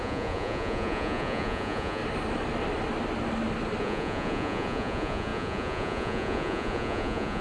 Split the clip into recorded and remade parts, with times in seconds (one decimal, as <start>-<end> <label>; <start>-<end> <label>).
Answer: 0.0-2.0 remade; 2.0-3.8 recorded; 3.8-7.4 remade